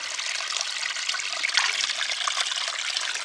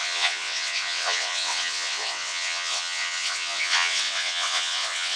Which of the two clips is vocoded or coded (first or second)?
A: second